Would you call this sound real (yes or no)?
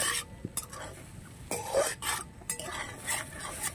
yes